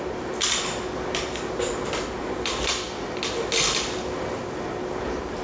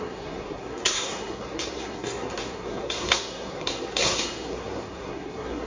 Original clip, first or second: first